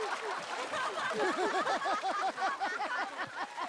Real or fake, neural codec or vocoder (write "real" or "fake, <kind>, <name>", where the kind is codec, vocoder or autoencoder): real